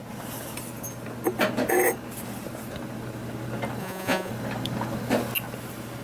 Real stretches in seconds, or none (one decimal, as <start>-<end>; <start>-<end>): 0.0-3.8; 4.3-6.0